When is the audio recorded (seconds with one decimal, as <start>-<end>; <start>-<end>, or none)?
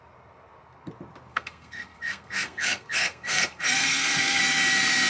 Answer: 0.0-1.3; 4.4-5.1